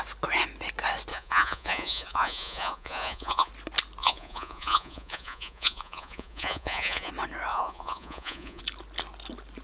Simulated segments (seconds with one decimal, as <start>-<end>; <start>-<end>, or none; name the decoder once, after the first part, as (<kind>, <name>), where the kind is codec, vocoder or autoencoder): 1.1-3.5 (vocoder, Vocos); 4.0-7.1; 7.5-8.6